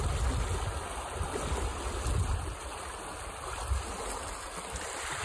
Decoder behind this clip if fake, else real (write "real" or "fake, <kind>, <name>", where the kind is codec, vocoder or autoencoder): real